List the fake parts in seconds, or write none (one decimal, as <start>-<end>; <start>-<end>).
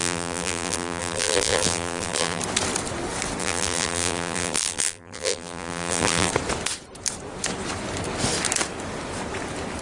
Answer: 0.0-2.4; 3.4-6.3